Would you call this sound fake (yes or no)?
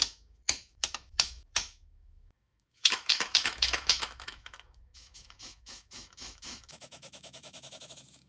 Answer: yes